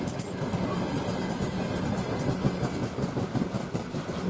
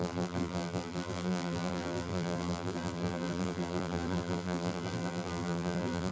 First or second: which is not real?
second